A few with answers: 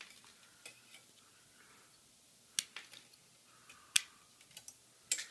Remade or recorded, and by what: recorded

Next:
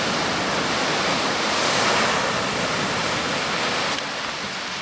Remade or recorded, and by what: recorded